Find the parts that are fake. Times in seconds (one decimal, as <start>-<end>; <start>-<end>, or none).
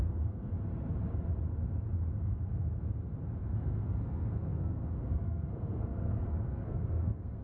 0.0-0.5; 2.2-2.8; 3.4-7.4